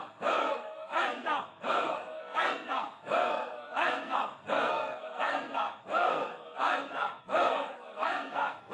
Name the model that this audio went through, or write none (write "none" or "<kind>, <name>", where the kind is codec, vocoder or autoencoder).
codec, SNAC